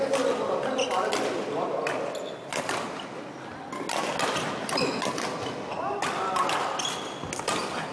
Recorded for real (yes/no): yes